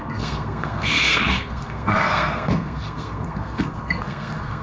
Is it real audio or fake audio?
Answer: fake